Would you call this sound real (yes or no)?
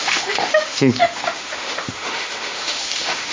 no